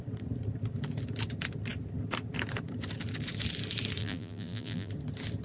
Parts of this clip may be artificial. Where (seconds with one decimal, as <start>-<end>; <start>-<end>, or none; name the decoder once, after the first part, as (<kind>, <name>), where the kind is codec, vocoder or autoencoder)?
4.0-4.9 (vocoder, BigVGAN v2)